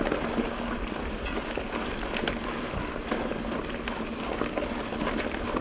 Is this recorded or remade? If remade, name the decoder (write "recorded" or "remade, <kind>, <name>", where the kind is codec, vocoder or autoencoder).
recorded